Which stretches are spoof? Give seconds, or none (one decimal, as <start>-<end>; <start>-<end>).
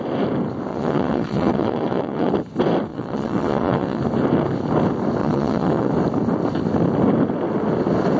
0.7-2.3; 2.9-4.0; 5.2-5.9